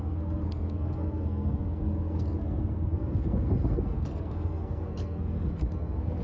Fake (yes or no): yes